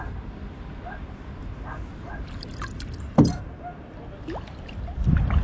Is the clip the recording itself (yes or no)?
yes